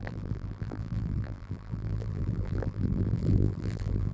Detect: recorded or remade remade